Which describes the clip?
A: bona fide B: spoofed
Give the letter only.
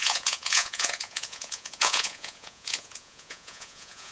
B